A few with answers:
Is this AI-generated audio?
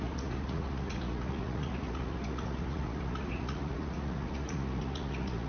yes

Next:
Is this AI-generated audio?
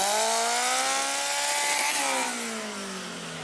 no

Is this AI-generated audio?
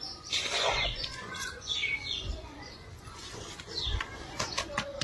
yes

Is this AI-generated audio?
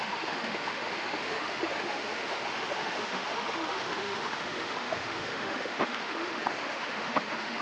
yes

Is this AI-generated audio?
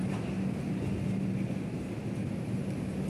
no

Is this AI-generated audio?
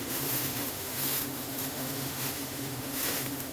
yes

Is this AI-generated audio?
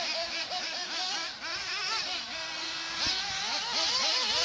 no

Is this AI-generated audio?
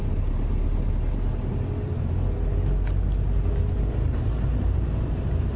no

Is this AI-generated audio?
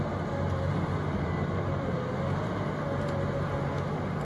no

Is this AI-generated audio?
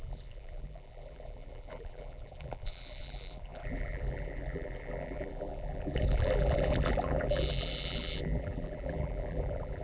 yes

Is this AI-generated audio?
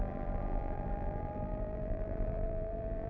yes